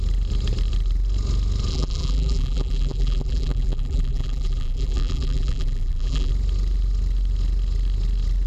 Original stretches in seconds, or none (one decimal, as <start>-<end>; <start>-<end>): 0.0-1.7; 6.3-8.5